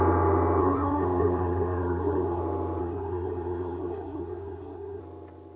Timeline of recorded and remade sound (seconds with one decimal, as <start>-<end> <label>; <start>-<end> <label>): 0.0-0.6 recorded; 0.6-2.4 remade; 2.4-2.8 recorded; 2.8-5.0 remade; 5.0-5.6 recorded